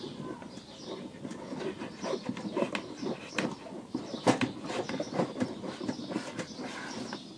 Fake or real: real